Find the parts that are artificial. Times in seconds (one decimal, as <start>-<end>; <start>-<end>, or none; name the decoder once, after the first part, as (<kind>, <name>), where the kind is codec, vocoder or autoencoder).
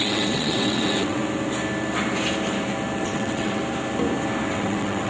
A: 0.0-1.2 (vocoder, WaveNeXt); 3.0-3.6; 4.5-5.1